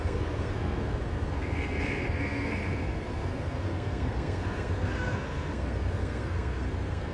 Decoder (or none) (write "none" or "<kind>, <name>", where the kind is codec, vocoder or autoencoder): codec, SNAC